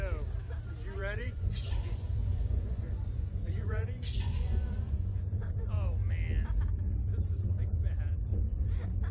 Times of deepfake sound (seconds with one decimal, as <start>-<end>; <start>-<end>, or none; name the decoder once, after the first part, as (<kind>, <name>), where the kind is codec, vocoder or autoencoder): 1.0-5.7 (vocoder, Vocos); 8.3-9.1